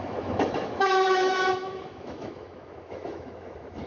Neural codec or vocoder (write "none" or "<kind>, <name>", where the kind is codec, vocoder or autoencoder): autoencoder, DAC-VAE